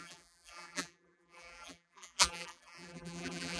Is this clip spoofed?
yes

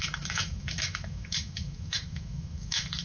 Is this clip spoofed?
yes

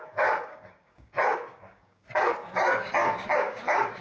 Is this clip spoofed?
yes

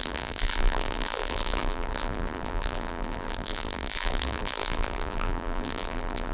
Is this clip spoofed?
yes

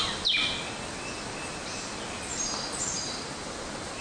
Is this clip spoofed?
no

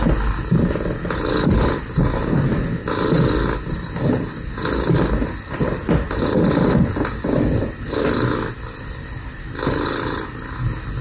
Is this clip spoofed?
no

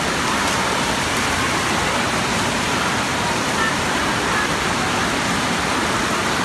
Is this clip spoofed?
no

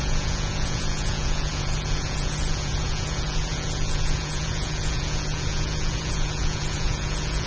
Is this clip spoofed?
yes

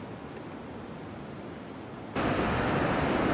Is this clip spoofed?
no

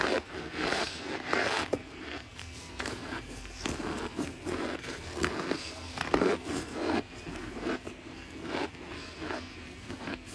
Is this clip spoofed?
yes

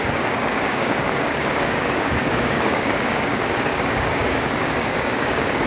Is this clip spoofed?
yes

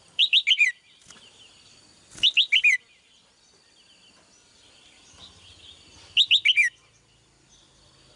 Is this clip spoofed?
no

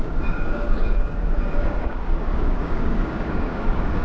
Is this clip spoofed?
yes